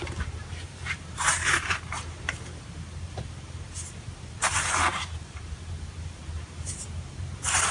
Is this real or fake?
fake